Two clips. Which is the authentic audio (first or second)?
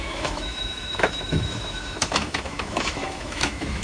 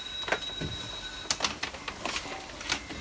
second